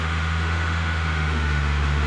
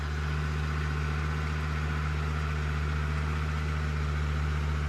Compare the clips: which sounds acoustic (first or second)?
second